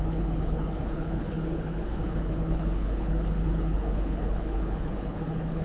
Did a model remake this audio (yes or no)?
yes